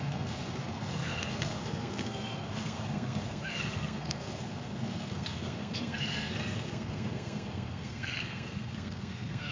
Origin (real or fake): fake